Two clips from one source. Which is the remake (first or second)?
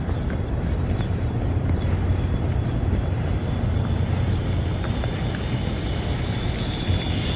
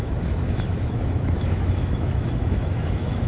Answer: second